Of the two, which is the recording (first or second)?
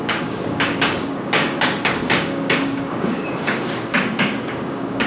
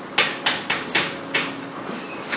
second